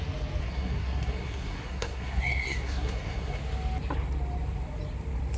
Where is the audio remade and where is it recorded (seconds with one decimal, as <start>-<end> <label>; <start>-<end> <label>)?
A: 0.0-0.4 recorded; 0.4-3.4 remade; 3.4-5.4 recorded